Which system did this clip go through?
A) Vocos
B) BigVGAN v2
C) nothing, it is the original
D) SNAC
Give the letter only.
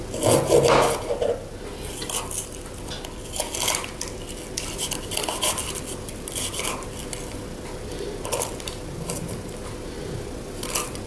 C